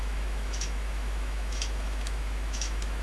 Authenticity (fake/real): fake